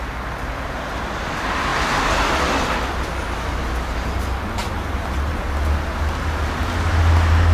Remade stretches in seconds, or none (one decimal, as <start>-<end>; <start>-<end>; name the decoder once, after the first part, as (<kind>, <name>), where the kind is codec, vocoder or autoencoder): none